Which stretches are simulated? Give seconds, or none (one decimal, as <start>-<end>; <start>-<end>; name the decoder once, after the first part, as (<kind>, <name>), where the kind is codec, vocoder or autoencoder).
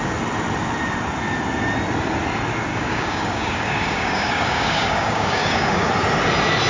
2.7-5.9 (codec, DAC)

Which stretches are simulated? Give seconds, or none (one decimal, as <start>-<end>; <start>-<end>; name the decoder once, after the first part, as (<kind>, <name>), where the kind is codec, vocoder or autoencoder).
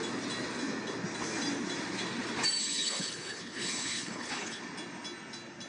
2.6-4.6 (codec, HILCodec)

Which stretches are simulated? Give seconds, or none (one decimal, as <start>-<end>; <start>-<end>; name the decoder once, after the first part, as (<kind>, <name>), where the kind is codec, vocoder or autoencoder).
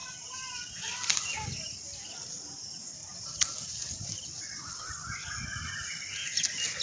none